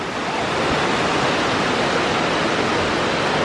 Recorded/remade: recorded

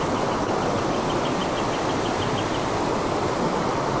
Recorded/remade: recorded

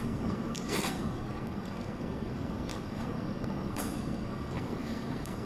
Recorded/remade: remade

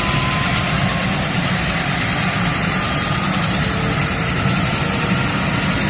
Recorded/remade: recorded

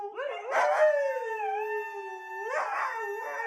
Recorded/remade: recorded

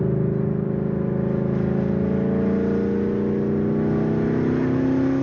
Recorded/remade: recorded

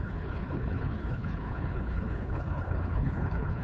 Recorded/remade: remade